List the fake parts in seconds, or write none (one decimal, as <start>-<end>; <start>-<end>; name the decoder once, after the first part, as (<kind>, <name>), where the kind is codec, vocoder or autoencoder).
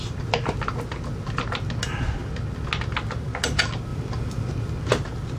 none